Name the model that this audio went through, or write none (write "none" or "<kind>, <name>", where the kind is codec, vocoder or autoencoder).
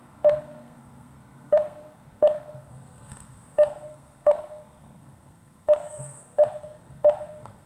codec, SNAC